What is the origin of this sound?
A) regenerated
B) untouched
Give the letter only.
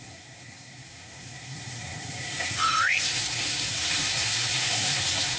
A